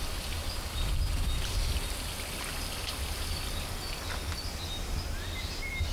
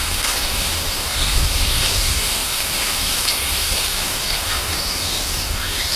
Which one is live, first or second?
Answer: first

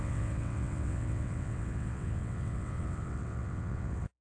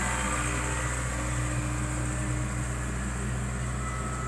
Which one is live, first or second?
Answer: second